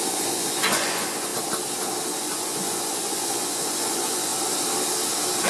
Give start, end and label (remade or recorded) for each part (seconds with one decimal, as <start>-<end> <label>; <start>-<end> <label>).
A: 0.0-1.3 remade; 1.3-2.2 recorded; 2.2-4.3 remade; 4.3-5.5 recorded